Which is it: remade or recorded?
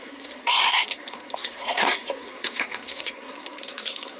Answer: remade